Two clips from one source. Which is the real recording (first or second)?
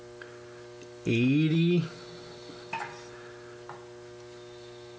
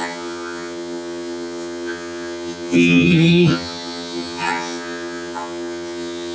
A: first